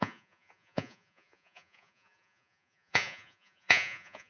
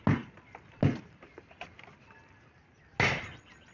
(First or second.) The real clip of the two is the second